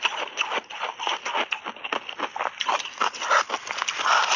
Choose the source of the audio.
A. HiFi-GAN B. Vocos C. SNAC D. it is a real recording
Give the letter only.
D